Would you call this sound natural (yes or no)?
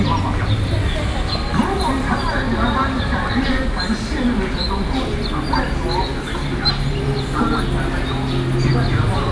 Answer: yes